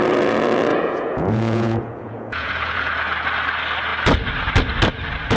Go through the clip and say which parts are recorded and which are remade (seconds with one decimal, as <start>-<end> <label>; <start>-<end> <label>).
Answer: 0.0-0.7 recorded; 0.7-2.9 remade; 2.9-5.4 recorded